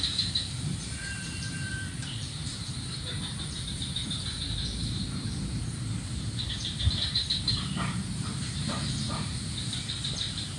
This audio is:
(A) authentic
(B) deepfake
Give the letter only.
B